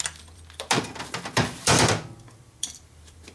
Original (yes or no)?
no